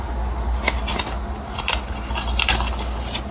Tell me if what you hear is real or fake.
real